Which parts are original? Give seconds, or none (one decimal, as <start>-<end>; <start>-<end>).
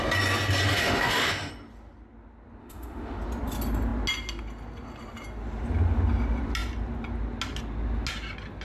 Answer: 0.0-0.7; 1.5-2.6; 3.2-8.6